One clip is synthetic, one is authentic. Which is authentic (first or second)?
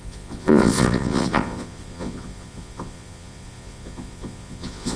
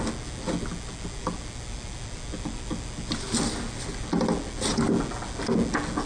second